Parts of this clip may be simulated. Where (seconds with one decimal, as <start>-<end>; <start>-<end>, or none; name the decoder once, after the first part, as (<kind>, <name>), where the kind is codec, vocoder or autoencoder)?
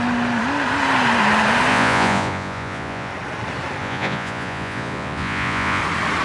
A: 1.7-3.1 (vocoder, Vocos); 3.8-5.8